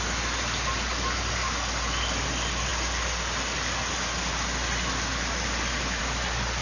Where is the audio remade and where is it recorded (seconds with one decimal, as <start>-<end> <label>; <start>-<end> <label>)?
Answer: 0.0-6.6 recorded